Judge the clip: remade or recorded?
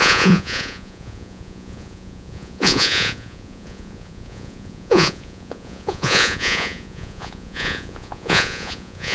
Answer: remade